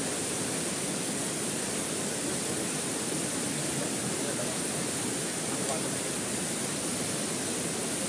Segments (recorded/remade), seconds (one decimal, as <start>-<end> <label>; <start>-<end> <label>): 0.0-8.1 recorded